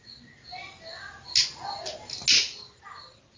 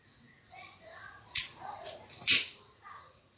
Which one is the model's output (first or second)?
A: second